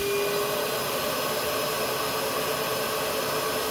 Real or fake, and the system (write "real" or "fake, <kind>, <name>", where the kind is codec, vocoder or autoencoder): real